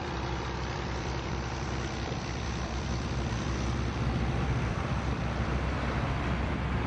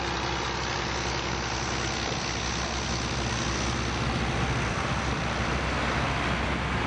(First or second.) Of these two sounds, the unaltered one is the second